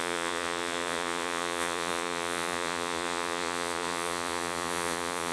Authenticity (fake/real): fake